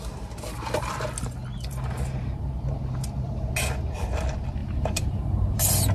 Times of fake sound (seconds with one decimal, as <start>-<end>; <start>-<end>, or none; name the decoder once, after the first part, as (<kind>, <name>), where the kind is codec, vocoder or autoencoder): 1.5-3.5 (vocoder, BigVGAN v2); 4.6-5.3